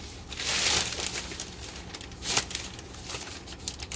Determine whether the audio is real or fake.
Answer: real